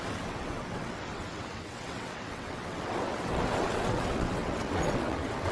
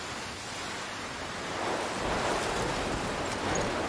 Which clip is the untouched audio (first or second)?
second